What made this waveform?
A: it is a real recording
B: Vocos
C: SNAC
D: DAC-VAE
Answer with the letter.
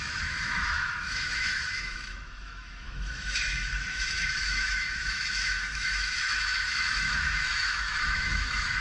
D